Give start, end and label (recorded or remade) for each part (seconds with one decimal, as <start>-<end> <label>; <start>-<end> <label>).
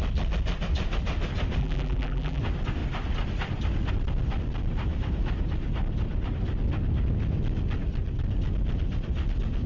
0.0-1.6 recorded; 1.6-2.4 remade; 2.4-9.7 recorded